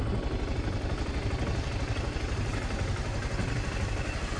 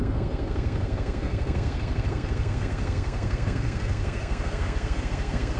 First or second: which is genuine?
first